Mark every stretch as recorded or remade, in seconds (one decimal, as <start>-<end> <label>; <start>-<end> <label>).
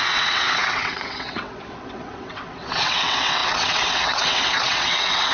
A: 0.0-5.3 remade